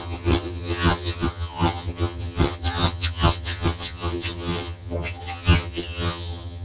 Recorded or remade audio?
remade